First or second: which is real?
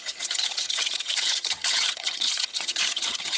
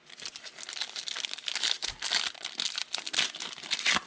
second